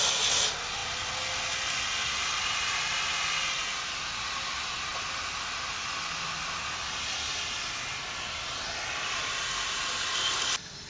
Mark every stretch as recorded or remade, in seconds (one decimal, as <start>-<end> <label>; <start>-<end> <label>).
0.0-10.9 recorded